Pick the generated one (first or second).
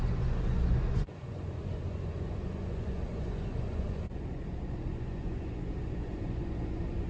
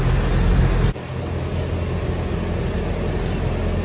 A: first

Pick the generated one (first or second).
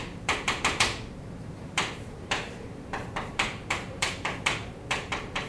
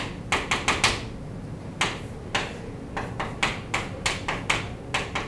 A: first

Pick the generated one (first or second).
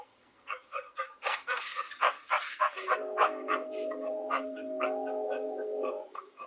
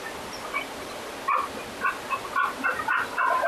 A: first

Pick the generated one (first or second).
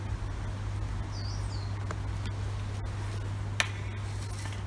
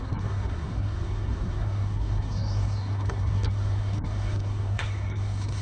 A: second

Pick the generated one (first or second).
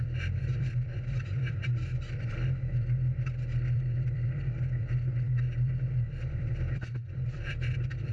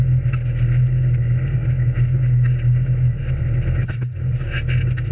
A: first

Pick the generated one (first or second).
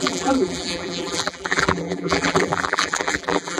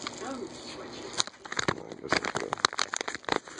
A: first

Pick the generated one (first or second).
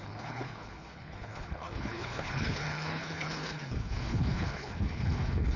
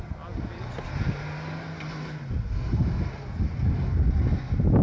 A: first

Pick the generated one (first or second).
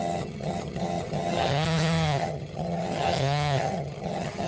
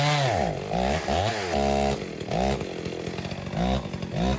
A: first